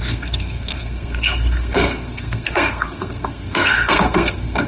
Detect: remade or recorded remade